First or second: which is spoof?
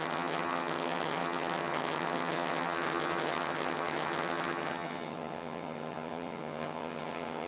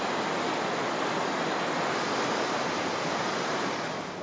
first